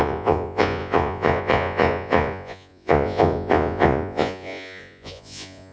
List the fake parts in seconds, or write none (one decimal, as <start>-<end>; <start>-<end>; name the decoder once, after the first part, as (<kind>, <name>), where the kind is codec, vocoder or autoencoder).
0.0-5.7 (vocoder, Vocos)